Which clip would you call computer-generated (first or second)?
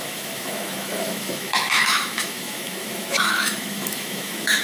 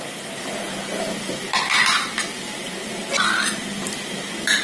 first